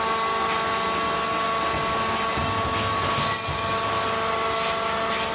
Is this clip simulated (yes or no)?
no